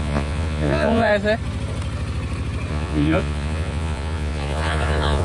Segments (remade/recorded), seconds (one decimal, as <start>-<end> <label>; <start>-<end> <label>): 0.0-1.1 remade; 1.1-2.7 recorded; 2.7-5.2 remade